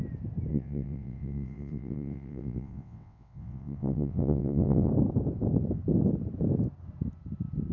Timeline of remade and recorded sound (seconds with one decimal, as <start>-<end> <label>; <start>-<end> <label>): 0.0-0.5 recorded; 0.5-4.9 remade; 4.9-7.7 recorded